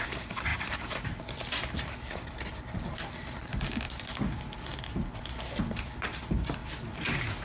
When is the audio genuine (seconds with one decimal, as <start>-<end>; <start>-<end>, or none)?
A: 0.0-7.4